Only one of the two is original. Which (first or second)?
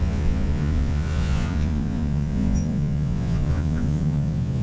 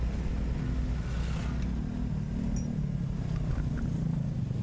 second